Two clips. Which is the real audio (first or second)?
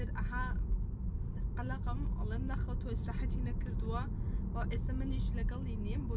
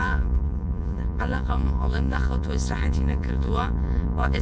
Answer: first